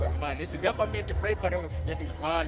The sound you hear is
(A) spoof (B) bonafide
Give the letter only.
A